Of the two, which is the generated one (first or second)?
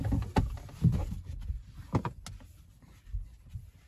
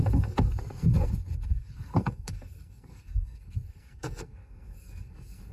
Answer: second